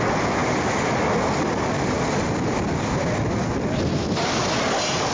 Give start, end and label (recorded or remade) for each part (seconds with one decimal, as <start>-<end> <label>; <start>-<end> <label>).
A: 0.0-5.1 recorded